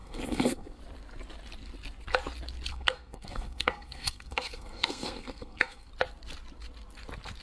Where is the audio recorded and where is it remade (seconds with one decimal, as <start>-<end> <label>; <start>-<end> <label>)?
0.0-0.8 remade; 0.8-2.7 recorded; 2.7-5.9 remade; 5.9-7.4 recorded